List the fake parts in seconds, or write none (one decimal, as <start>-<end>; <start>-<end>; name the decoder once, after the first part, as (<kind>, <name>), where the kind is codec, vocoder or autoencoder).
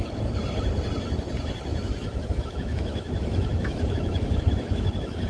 1.7-5.3 (autoencoder, DAC-VAE)